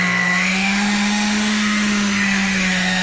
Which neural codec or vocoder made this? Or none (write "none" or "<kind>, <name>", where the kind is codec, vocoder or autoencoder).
autoencoder, DAC-VAE